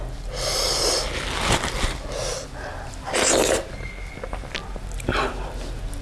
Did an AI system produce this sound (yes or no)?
no